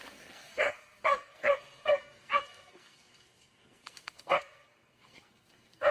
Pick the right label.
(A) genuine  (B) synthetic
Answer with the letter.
B